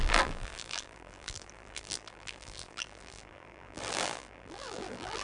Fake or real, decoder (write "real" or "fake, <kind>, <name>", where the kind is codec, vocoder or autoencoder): fake, vocoder, BigVGAN v2